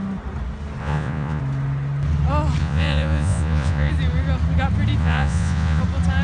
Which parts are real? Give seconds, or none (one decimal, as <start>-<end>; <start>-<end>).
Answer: 0.0-0.8; 1.4-2.6; 3.9-5.0; 5.8-6.2